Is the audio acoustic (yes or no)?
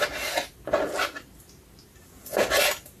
yes